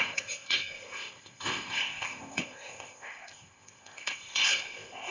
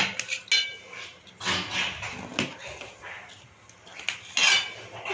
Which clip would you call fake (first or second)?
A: first